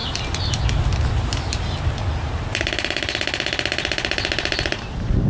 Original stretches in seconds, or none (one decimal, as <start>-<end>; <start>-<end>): 1.1-5.3